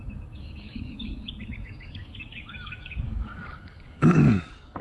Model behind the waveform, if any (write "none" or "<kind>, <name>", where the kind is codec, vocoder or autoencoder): codec, DAC